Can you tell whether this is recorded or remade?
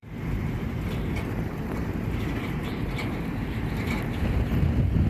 remade